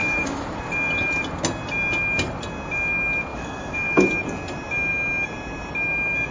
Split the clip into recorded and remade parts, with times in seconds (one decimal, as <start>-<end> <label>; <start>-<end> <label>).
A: 0.0-0.6 remade; 0.6-3.3 recorded; 3.3-4.1 remade; 4.1-6.3 recorded